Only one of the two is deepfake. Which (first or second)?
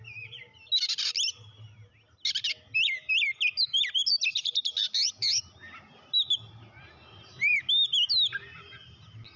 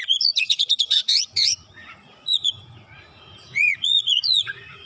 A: second